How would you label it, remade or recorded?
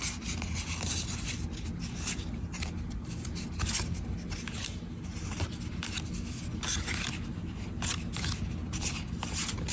recorded